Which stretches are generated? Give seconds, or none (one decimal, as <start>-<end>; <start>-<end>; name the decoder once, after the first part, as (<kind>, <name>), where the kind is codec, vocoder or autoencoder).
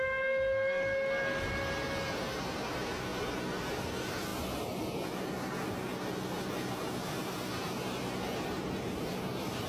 none